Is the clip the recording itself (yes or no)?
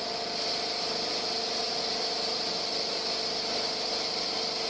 yes